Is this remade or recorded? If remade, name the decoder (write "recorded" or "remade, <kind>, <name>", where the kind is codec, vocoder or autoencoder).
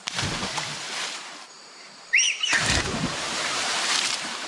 remade, vocoder, BigVGAN v2